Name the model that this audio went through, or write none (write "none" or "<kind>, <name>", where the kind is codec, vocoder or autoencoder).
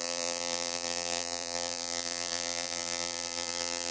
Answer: vocoder, BigVGAN v2